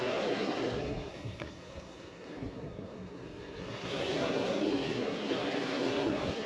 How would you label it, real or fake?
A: fake